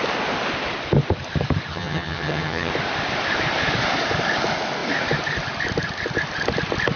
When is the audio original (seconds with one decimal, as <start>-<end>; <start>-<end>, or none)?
0.0-1.7; 2.7-7.0